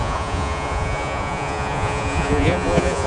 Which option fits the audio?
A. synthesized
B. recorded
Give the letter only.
A